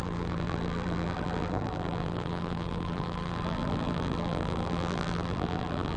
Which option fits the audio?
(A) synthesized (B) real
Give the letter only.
A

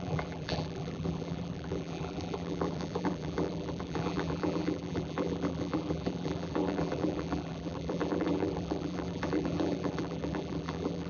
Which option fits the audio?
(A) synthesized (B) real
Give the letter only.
A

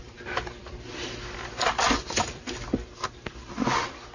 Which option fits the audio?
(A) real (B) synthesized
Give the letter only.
B